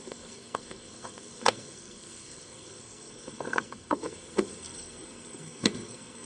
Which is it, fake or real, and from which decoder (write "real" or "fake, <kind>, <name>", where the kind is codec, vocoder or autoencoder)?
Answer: fake, codec, SNAC